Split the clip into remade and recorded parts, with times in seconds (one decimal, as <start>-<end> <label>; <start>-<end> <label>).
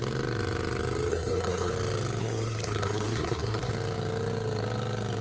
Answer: 0.0-1.1 recorded; 1.1-1.7 remade; 1.7-2.2 recorded; 2.2-3.7 remade; 3.7-5.2 recorded